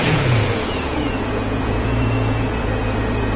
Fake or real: fake